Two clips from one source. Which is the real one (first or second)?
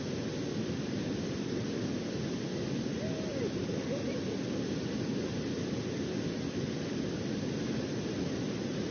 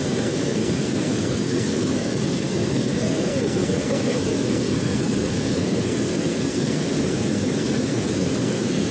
first